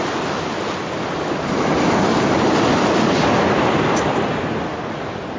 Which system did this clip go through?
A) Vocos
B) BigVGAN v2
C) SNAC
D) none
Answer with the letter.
D